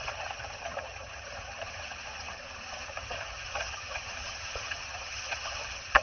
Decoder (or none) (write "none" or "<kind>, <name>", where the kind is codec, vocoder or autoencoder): vocoder, HiFi-GAN